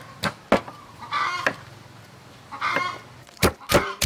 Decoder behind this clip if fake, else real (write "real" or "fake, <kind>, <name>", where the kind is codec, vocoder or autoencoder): real